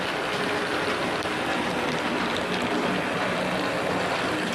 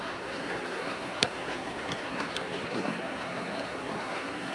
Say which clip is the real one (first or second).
first